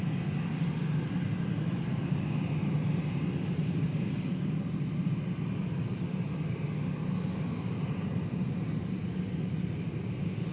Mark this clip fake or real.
real